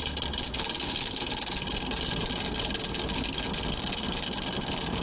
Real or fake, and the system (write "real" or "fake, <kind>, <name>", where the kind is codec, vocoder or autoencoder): real